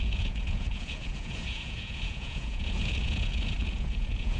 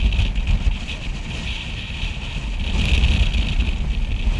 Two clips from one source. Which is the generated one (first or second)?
first